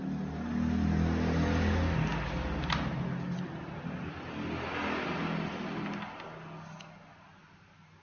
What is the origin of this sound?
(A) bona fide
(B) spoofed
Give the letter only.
A